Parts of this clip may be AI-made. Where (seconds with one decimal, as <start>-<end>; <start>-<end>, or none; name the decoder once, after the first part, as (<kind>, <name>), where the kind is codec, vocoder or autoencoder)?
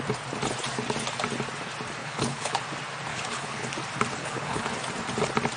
2.0-2.6 (codec, HILCodec); 3.1-3.7; 4.2-4.7